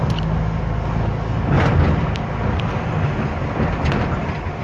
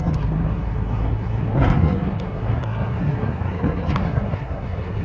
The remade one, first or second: second